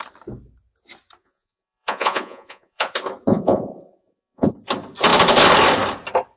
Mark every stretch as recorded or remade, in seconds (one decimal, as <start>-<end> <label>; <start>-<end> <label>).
0.0-1.2 recorded; 1.2-2.9 remade; 2.9-3.3 recorded; 3.3-4.5 remade; 4.5-6.4 recorded